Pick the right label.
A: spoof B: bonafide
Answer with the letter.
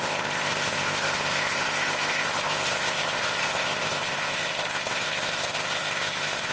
A